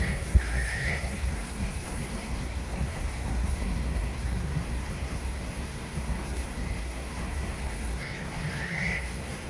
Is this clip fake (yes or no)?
yes